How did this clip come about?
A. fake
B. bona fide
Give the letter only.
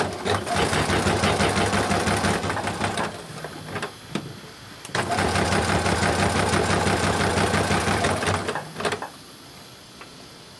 B